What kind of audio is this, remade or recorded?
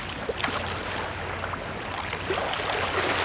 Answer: recorded